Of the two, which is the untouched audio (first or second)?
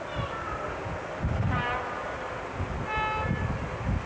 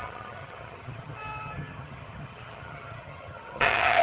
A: first